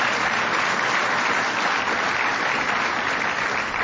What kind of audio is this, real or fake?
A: real